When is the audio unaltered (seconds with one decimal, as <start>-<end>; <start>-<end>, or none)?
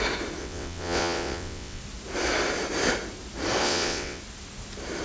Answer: 0.0-0.4; 1.8-3.6; 4.2-5.0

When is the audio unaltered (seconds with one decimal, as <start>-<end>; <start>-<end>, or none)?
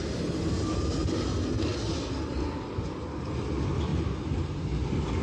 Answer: 0.0-5.2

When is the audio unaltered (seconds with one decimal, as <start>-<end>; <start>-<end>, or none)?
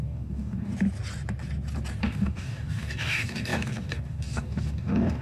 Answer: 0.7-2.0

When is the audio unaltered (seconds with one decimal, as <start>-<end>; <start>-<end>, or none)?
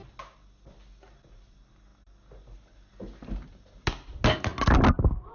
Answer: 0.0-5.3